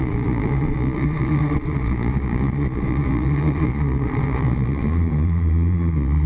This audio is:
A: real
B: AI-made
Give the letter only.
B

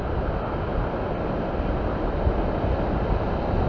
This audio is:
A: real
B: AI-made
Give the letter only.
A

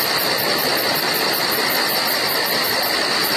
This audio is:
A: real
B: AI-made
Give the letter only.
A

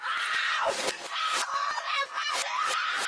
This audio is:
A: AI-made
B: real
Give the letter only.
B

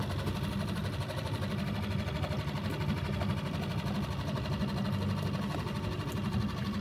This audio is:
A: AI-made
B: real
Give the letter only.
B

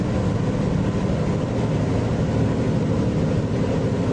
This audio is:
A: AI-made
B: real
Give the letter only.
B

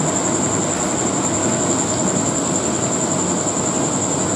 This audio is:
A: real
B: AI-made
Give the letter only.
A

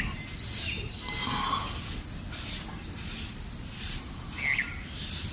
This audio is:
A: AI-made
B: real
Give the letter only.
B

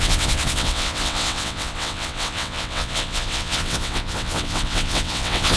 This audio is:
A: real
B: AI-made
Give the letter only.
B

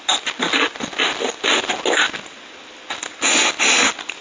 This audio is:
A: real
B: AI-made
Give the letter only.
A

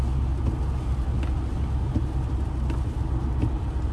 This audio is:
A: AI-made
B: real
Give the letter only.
B